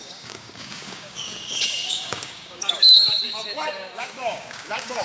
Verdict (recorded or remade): remade